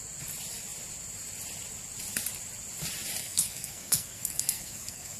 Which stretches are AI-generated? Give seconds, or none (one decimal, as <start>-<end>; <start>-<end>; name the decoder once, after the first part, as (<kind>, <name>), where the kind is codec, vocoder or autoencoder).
3.2-5.2 (codec, SNAC)